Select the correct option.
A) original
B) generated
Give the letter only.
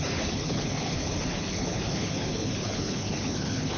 B